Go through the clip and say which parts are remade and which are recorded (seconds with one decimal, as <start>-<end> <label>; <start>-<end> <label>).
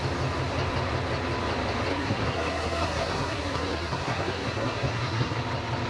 0.0-1.9 recorded; 1.9-5.4 remade; 5.4-5.9 recorded